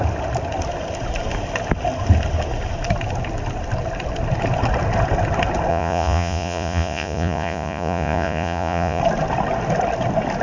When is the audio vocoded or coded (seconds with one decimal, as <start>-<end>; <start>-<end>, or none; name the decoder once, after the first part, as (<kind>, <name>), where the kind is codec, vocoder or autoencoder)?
5.7-9.0 (vocoder, Vocos)